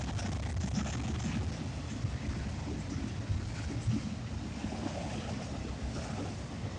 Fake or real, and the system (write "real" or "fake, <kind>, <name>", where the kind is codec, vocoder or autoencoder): real